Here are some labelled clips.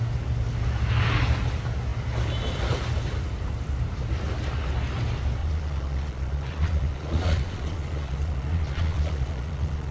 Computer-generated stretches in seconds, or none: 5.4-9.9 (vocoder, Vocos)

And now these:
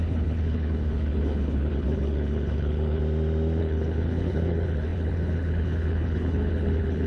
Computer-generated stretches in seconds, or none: 0.0-3.0 (codec, HILCodec); 3.6-7.1

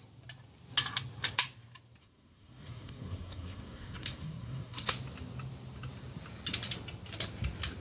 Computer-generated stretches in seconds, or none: 2.0-4.9 (codec, SNAC)

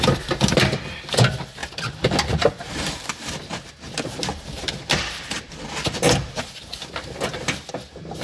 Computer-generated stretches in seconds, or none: none

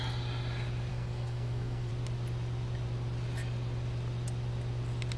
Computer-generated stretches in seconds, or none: 0.9-1.9 (codec, SNAC)

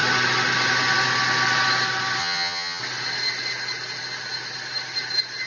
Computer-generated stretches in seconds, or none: 2.2-2.8 (vocoder, HiFi-GAN)

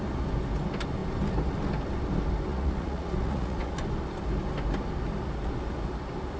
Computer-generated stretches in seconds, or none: 2.5-3.7 (vocoder, Vocos)

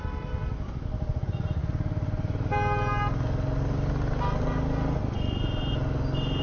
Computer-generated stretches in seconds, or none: none